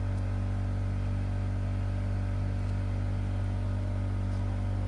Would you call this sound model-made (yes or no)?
no